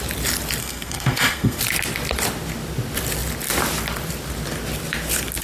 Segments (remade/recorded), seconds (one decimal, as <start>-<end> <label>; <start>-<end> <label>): 0.0-0.6 recorded; 0.6-1.6 remade; 1.6-5.4 recorded